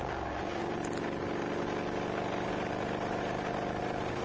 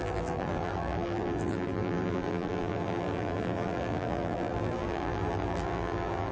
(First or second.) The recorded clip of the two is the first